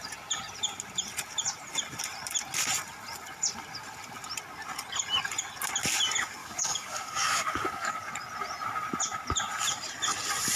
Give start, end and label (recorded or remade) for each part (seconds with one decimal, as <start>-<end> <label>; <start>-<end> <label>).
0.0-6.4 recorded; 6.4-8.1 remade; 8.1-10.6 recorded

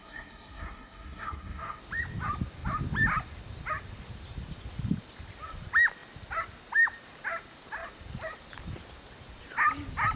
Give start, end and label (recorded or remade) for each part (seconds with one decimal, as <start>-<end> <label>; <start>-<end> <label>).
0.0-1.8 remade; 1.8-10.2 recorded

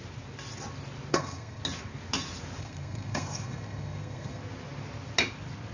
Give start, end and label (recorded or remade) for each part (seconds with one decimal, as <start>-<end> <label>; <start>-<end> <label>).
0.0-1.1 recorded; 1.1-1.6 remade; 1.6-2.6 recorded; 2.6-4.4 remade; 4.4-5.7 recorded

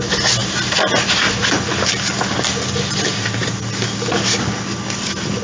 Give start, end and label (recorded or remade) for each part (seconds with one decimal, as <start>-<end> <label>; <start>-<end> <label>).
0.0-5.4 recorded